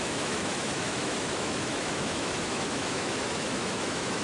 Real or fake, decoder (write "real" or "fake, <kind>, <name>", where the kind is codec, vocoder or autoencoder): fake, autoencoder, DAC-VAE